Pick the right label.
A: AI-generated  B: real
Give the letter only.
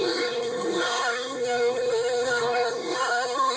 A